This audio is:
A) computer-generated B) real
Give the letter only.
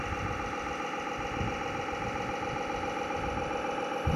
B